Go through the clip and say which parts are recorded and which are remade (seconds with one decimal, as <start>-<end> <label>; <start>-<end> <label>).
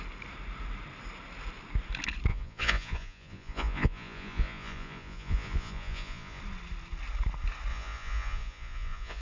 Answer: 0.0-2.3 recorded; 2.3-6.4 remade; 6.4-7.7 recorded; 7.7-9.2 remade